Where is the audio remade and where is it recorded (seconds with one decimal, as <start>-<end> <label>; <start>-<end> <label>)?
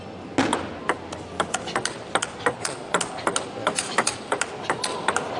0.0-3.6 recorded; 3.6-4.1 remade; 4.1-5.4 recorded